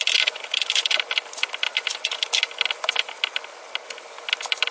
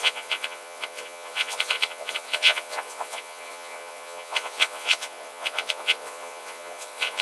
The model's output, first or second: second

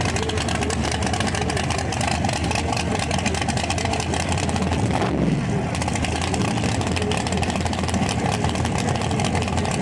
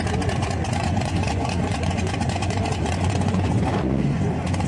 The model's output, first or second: second